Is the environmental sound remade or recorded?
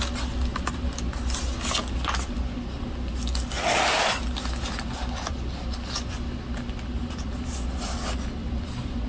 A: recorded